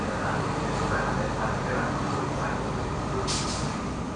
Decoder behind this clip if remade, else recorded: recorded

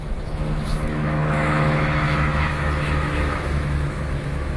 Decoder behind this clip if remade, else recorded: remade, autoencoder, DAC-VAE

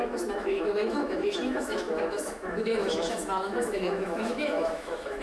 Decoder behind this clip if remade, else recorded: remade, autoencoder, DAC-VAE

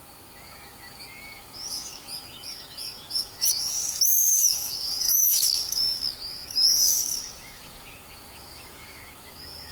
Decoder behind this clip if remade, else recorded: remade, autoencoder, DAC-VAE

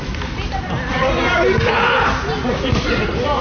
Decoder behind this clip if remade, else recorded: recorded